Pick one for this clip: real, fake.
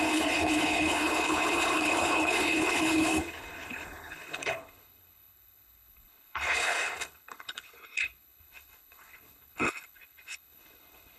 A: fake